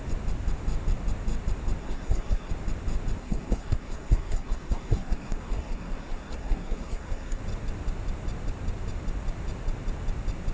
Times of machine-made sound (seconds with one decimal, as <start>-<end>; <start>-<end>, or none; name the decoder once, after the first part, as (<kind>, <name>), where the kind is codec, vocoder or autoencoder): 1.8-2.5 (codec, SNAC); 3.2-7.4